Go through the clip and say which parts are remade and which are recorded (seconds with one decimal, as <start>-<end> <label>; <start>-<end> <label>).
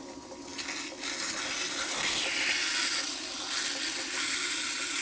0.0-5.0 recorded